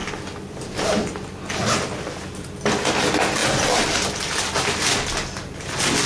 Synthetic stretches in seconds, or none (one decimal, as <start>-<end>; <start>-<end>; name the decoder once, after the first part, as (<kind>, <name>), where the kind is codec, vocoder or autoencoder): 3.4-4.4 (vocoder, BigVGAN v2)